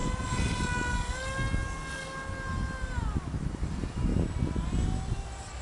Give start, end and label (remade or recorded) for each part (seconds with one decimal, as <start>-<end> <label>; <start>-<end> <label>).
0.0-3.4 recorded; 3.4-4.1 remade; 4.1-5.6 recorded